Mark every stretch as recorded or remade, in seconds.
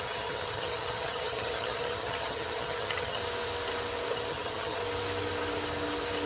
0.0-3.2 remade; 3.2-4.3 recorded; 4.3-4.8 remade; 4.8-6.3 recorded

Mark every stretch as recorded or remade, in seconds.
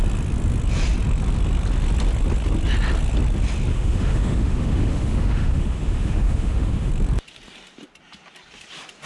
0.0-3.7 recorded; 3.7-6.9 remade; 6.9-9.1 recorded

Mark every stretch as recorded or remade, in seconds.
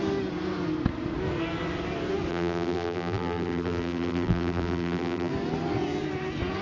0.0-2.3 recorded; 2.3-5.3 remade; 5.3-6.6 recorded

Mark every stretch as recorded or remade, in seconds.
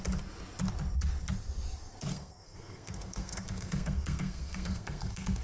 0.0-2.1 recorded; 2.1-5.4 remade